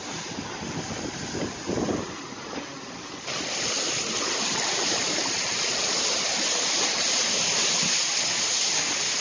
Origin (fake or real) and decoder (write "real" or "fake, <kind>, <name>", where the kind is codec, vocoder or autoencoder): real